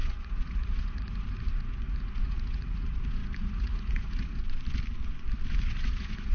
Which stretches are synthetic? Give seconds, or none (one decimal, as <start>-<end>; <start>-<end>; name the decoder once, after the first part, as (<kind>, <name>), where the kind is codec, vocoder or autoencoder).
0.0-4.4 (vocoder, Vocos); 5.5-6.3